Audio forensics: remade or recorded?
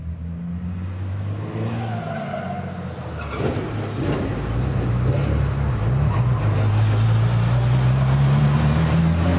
recorded